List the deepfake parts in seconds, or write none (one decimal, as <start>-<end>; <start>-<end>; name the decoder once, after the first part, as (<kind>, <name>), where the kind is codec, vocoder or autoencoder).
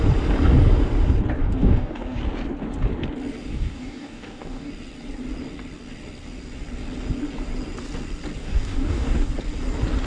1.4-2.2 (codec, DAC); 3.5-4.7; 8.4-9.3